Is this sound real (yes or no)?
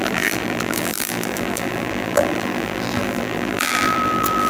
no